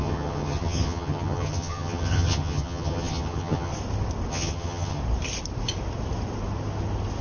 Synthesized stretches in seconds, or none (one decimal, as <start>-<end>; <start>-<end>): 0.0-3.7; 4.3-5.0